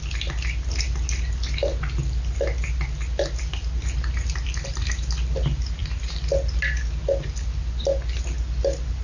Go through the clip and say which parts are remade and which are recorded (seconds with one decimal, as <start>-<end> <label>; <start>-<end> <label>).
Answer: 0.0-9.0 recorded